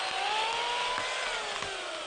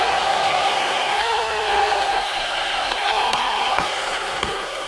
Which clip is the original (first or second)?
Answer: first